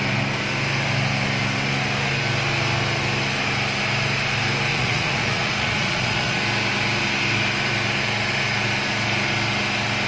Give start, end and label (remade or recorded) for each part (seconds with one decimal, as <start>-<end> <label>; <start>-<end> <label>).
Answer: 0.0-4.7 recorded; 4.7-6.4 remade; 6.4-10.1 recorded

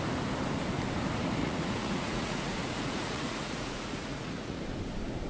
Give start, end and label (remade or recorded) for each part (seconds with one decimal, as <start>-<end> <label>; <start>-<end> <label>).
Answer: 0.0-1.4 recorded; 1.4-4.6 remade; 4.6-5.3 recorded

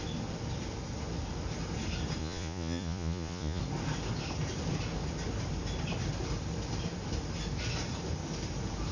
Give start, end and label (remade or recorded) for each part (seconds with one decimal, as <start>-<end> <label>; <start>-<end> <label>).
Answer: 0.0-2.2 recorded; 2.2-3.6 remade; 3.6-8.9 recorded

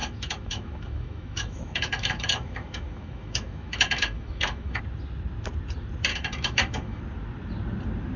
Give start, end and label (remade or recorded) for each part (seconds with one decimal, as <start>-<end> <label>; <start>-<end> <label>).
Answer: 0.0-4.8 remade; 4.8-6.1 recorded; 6.1-7.0 remade; 7.0-8.2 recorded

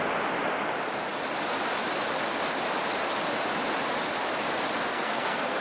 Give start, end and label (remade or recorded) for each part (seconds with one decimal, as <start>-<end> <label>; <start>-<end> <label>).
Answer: 0.0-4.9 recorded; 4.9-5.6 remade

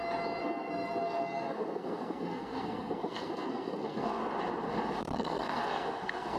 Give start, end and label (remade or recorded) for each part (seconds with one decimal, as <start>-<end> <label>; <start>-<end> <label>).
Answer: 0.0-0.4 recorded; 0.4-4.2 remade; 4.2-5.0 recorded; 5.0-6.4 remade

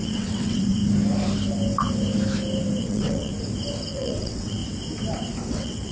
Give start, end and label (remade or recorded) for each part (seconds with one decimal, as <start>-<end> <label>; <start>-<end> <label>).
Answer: 0.0-0.8 remade; 0.8-2.8 recorded; 2.8-3.3 remade; 3.3-3.9 recorded; 3.9-4.6 remade; 4.6-5.5 recorded; 5.5-5.9 remade